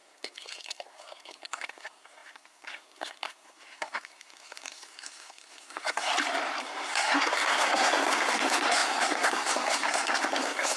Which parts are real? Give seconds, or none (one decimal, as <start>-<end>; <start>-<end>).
6.1-6.6